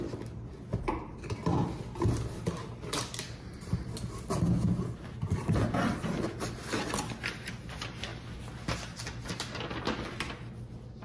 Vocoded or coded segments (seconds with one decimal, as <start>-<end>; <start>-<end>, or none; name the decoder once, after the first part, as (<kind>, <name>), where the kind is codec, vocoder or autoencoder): none